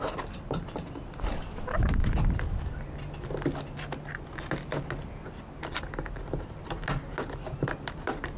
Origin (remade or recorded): recorded